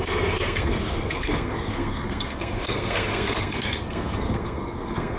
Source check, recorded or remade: remade